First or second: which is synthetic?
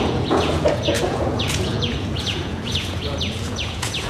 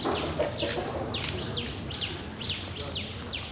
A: first